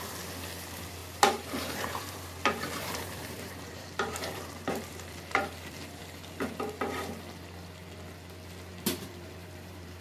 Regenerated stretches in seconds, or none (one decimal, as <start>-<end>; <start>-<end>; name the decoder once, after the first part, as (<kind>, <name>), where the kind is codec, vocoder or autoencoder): 1.0-6.0 (vocoder, BigVGAN v2); 8.7-10.0